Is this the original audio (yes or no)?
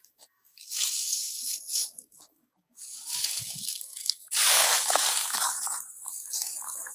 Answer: no